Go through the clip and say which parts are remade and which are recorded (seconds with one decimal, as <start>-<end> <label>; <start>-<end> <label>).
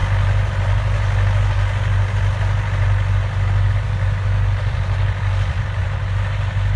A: 0.0-3.7 recorded; 3.7-6.8 remade